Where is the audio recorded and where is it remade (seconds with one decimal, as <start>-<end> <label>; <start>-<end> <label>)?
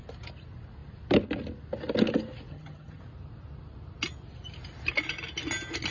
0.0-2.5 recorded; 2.5-3.0 remade; 3.0-5.9 recorded